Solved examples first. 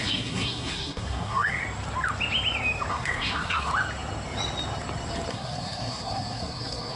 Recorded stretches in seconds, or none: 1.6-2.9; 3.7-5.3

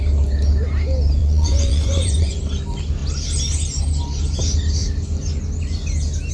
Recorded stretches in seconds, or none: 0.0-1.2; 2.4-6.3

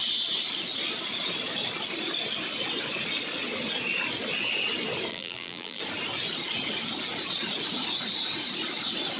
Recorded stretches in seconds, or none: 0.0-5.1; 5.8-9.2